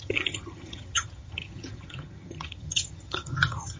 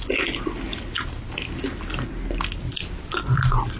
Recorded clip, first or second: second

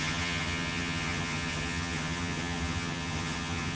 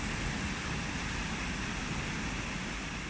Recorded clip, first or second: second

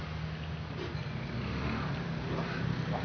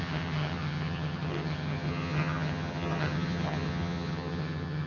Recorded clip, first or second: first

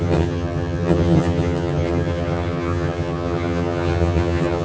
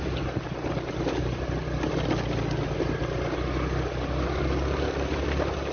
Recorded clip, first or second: second